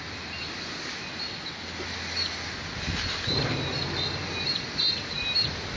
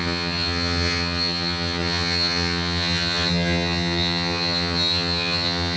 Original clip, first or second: first